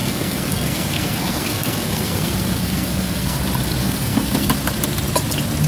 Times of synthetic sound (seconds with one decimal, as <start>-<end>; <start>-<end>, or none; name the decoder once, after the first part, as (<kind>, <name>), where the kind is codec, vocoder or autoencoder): 0.0-3.4 (codec, SNAC); 3.8-4.5